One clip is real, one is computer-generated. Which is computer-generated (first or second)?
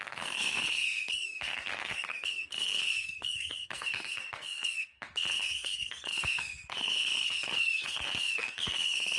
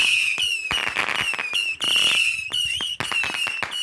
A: first